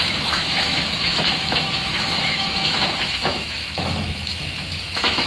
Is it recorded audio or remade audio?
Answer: remade